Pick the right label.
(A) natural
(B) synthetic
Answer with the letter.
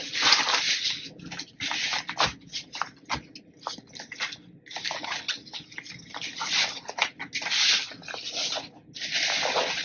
A